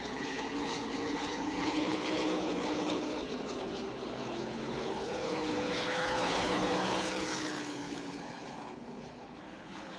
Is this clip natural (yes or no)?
no